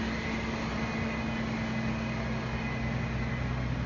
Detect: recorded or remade recorded